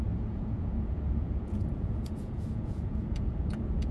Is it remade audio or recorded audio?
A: remade